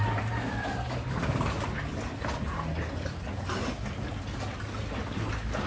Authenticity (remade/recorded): recorded